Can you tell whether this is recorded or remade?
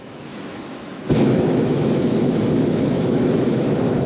remade